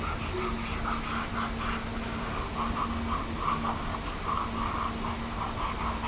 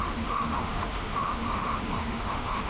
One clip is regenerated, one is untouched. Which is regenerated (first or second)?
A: second